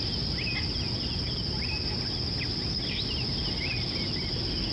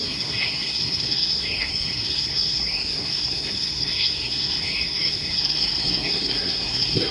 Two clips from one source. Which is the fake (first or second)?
second